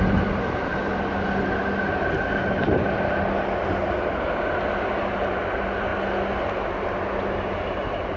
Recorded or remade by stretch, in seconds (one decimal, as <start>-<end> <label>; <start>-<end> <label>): 0.0-0.7 remade; 0.7-5.1 recorded; 5.1-5.9 remade; 5.9-7.3 recorded; 7.3-8.2 remade